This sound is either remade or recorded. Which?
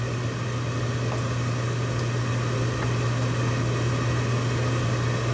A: recorded